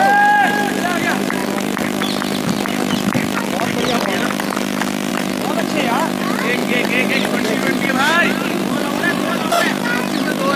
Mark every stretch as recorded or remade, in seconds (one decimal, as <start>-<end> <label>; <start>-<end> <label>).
0.0-1.4 remade; 1.4-5.1 recorded; 5.1-10.6 remade